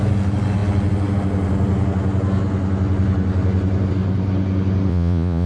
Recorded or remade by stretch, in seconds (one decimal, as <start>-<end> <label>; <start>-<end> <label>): 0.0-4.9 recorded; 4.9-5.5 remade